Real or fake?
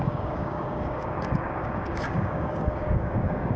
fake